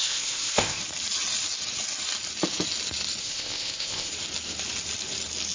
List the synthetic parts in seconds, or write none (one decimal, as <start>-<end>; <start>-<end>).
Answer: 0.0-0.8; 3.2-4.1